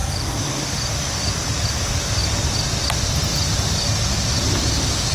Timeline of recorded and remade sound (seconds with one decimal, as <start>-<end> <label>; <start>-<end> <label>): 0.0-1.5 remade; 1.5-3.3 recorded; 3.3-4.5 remade; 4.5-5.1 recorded